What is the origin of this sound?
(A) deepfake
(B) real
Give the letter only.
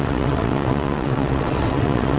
A